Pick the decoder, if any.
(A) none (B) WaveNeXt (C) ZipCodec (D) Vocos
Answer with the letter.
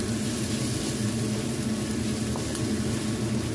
A